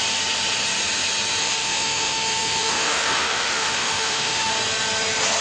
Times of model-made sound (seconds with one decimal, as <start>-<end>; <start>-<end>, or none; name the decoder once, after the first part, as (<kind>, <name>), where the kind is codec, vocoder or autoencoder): 1.4-4.5 (autoencoder, DAC-VAE)